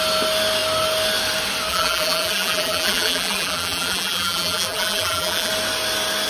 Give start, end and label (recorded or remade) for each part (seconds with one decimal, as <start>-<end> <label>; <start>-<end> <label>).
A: 0.0-1.7 recorded; 1.7-5.5 remade; 5.5-6.3 recorded